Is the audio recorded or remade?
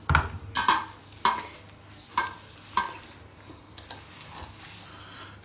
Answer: recorded